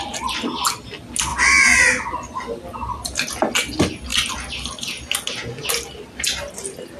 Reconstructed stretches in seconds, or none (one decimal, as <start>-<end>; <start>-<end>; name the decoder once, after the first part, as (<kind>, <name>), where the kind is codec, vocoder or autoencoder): none